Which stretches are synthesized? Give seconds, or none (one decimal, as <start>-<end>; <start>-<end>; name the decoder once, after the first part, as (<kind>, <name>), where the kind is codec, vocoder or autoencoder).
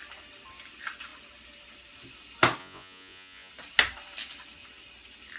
2.6-3.5 (vocoder, Vocos)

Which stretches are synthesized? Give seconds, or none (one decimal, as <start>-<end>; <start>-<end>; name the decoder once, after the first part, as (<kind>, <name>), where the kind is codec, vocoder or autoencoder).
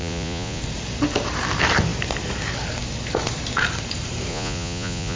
0.0-0.6 (vocoder, Vocos); 4.3-5.2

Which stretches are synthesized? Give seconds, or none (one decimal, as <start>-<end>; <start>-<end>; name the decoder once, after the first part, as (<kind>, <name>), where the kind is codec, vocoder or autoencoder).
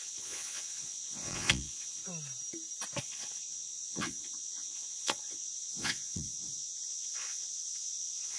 0.0-2.0 (vocoder, Vocos); 3.0-8.4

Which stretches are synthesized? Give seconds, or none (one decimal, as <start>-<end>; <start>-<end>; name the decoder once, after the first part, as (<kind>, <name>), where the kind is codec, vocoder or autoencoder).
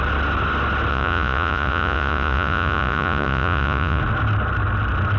0.9-4.0 (vocoder, Vocos)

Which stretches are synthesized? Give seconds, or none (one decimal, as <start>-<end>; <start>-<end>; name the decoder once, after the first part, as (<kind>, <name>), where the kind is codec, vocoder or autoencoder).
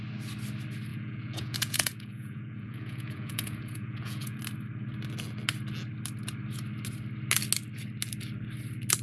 0.9-4.4 (vocoder, Vocos)